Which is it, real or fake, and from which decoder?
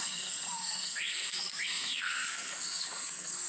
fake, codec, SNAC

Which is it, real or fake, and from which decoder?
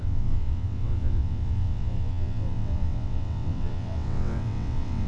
fake, vocoder, WaveNeXt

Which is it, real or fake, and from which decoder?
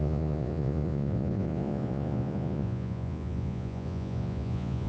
fake, vocoder, Vocos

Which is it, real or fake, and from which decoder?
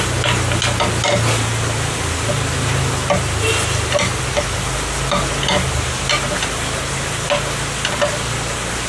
real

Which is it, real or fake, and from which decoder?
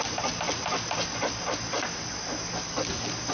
real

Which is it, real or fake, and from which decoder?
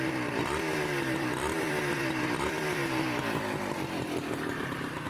fake, vocoder, BigVGAN v2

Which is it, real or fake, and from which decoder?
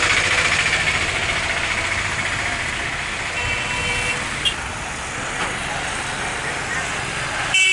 real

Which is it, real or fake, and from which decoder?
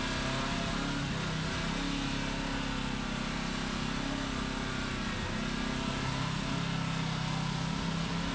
real